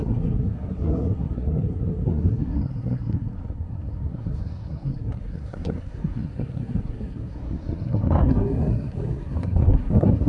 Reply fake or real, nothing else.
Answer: fake